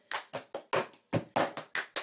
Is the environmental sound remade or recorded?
recorded